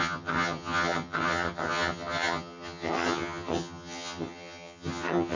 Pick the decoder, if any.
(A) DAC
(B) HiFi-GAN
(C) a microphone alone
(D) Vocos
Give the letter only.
B